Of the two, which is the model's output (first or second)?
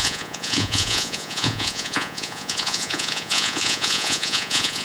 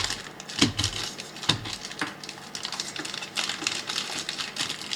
first